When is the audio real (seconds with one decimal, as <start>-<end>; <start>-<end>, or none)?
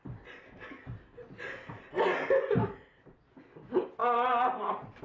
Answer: 0.0-5.0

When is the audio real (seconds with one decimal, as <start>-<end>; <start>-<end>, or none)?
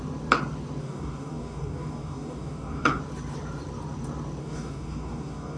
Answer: 0.0-0.8; 3.0-4.4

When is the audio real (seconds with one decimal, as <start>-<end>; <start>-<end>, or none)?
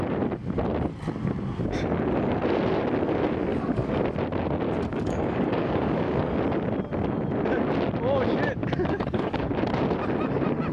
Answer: 0.0-3.5; 4.0-4.9; 6.2-8.6; 9.5-10.7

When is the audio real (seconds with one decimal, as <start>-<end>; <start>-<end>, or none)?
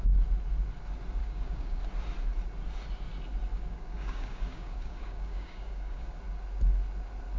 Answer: 0.0-1.2; 1.8-3.5; 6.2-7.4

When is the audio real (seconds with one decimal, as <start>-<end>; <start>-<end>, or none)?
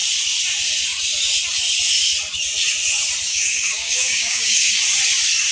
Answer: 0.0-3.3; 4.8-5.5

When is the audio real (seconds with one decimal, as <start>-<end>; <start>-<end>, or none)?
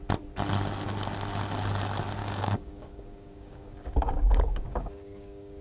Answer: 0.0-2.2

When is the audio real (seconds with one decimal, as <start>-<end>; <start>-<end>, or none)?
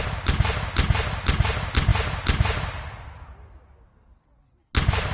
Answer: 0.0-5.1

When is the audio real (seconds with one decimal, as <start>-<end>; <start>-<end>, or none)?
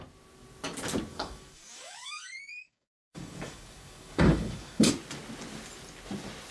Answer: 0.0-1.1; 4.9-6.5